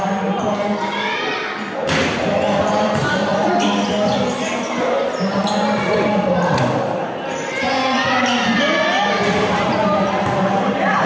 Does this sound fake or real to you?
real